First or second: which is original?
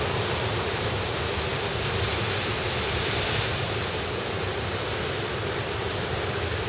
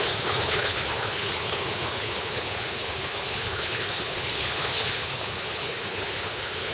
first